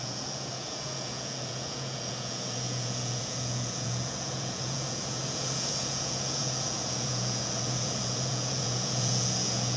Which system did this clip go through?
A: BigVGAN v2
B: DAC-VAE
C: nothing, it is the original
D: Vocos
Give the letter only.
D